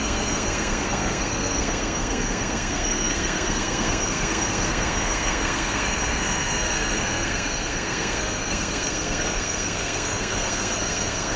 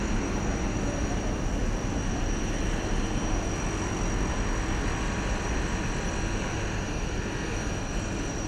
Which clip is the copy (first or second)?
first